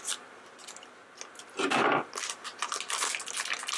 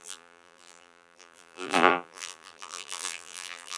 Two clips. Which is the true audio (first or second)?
first